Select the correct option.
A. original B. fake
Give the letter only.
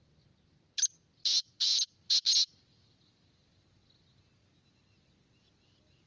A